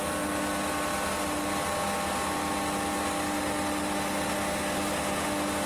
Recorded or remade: recorded